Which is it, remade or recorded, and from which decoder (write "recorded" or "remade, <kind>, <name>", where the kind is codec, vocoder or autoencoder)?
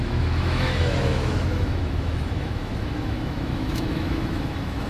remade, autoencoder, DAC-VAE